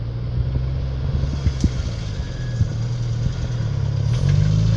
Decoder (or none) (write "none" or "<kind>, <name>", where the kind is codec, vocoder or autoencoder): none